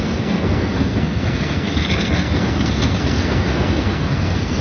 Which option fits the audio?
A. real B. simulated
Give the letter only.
B